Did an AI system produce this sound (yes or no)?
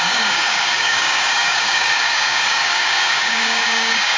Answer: yes